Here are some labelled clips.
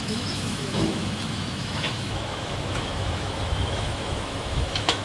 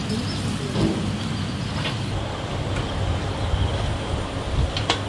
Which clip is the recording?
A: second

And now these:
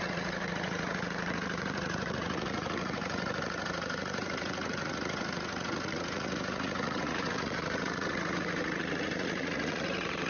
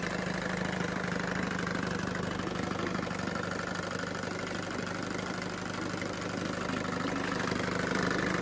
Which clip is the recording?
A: second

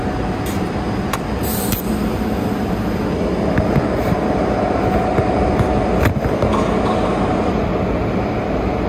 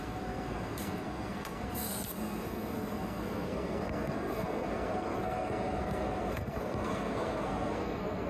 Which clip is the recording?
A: first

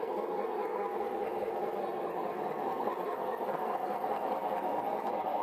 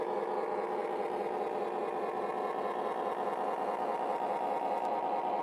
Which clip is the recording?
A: second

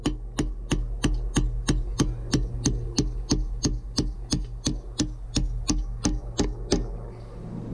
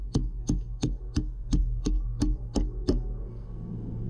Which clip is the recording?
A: first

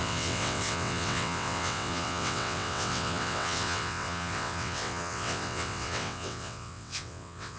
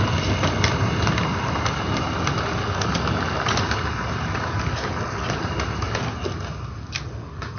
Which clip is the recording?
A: second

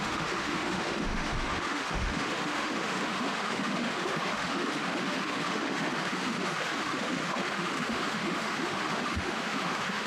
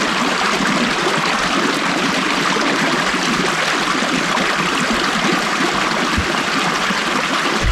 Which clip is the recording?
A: second